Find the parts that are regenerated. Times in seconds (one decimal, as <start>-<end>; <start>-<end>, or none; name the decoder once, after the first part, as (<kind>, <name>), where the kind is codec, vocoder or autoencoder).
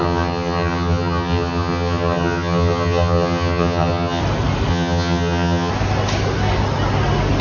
0.0-4.2 (vocoder, HiFi-GAN); 4.7-5.7